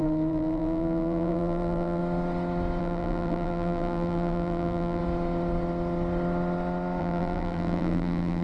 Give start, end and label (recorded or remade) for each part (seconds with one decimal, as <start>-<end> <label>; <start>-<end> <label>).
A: 0.0-2.0 remade; 2.0-2.8 recorded; 2.8-5.0 remade; 5.0-7.0 recorded; 7.0-8.4 remade

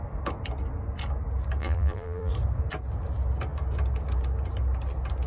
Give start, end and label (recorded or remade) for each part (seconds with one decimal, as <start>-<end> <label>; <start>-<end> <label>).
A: 0.0-1.6 recorded; 1.6-2.3 remade; 2.3-5.3 recorded